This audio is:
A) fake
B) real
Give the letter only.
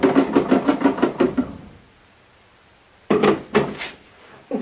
B